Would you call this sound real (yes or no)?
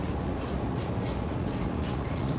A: no